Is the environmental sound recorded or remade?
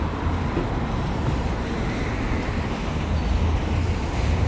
recorded